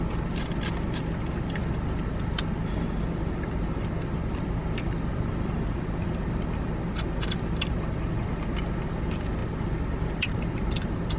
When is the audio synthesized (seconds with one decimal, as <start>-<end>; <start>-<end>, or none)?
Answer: none